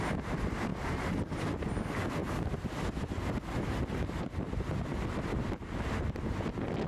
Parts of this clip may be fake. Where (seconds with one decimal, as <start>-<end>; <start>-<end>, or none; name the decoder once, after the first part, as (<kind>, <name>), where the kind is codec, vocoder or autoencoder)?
none